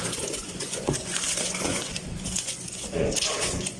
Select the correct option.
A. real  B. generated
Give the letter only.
B